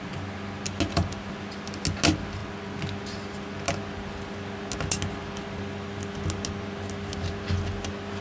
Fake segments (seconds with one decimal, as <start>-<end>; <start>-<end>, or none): none